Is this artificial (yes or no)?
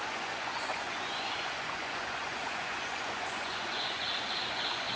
yes